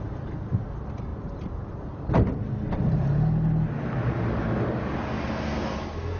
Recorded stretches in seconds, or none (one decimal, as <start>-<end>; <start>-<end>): 0.0-6.2